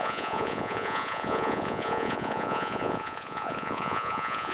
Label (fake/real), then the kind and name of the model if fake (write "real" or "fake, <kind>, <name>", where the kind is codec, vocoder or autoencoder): fake, vocoder, Vocos